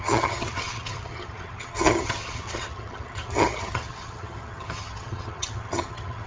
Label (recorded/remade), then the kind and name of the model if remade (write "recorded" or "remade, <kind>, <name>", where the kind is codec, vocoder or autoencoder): remade, vocoder, HiFi-GAN